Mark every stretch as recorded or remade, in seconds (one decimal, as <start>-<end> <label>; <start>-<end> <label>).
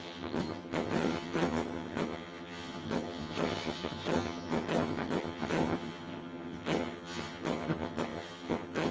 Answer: 0.0-8.9 remade